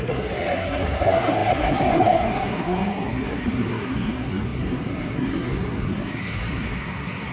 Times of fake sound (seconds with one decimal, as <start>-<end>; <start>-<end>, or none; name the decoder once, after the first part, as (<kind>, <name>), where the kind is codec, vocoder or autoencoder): 0.0-7.3 (codec, SNAC)